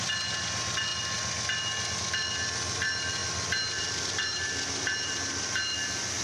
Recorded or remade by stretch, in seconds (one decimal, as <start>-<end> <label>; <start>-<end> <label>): 0.0-0.9 remade; 0.9-2.0 recorded; 2.0-6.2 remade